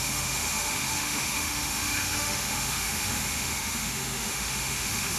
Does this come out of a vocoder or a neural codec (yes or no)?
yes